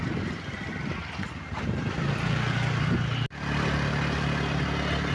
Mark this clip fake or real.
real